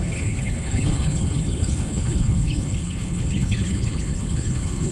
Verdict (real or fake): fake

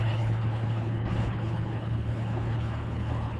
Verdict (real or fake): fake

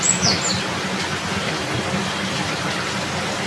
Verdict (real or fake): real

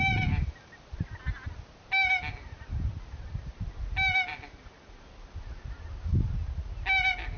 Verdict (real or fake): real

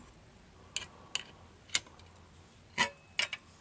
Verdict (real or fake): real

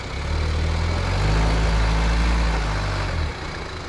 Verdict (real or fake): real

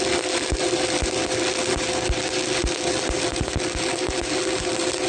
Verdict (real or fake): real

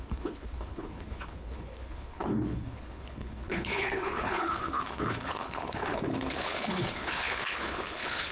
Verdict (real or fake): fake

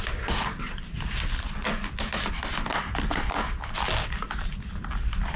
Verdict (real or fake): real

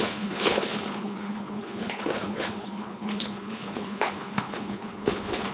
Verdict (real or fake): fake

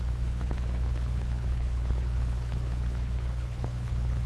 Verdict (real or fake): fake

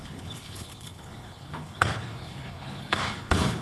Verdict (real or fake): fake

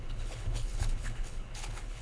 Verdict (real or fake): fake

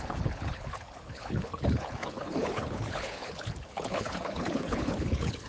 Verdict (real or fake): fake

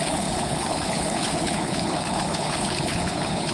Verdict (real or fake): fake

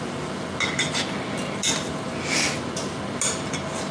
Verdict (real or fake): real